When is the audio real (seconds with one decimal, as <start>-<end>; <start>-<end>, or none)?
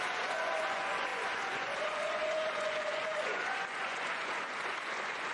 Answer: none